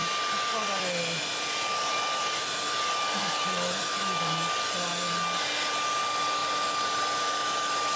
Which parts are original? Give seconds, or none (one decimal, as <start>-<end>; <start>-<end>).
0.0-3.2; 4.0-8.0